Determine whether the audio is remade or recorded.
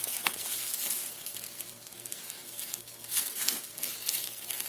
remade